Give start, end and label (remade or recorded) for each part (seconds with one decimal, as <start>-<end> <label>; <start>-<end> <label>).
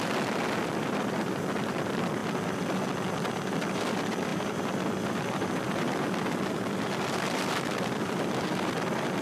0.0-2.2 remade; 2.2-3.5 recorded; 3.5-9.2 remade